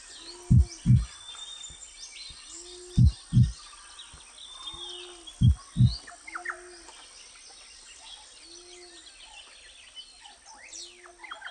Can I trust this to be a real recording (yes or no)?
yes